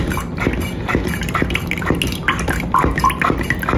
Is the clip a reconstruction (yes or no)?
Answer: no